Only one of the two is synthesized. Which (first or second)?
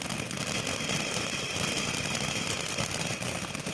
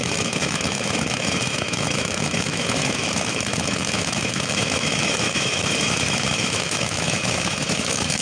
second